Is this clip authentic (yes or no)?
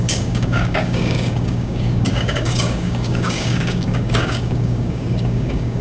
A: no